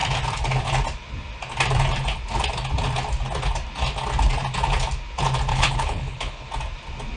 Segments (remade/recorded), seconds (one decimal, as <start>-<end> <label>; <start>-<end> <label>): 0.0-5.5 recorded; 5.5-6.5 remade; 6.5-7.2 recorded